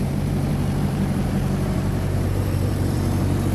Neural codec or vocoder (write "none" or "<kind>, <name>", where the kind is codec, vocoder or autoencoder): vocoder, BigVGAN v2